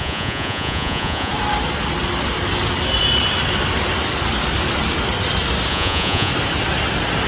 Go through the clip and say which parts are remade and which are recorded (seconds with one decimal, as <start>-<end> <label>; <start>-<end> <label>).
0.0-1.3 remade; 1.3-5.7 recorded; 5.7-6.3 remade; 6.3-7.3 recorded